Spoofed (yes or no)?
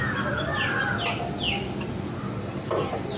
no